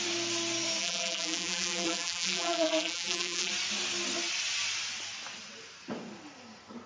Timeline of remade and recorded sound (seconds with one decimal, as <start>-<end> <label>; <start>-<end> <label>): 0.0-0.8 recorded; 0.8-3.5 remade; 3.5-6.9 recorded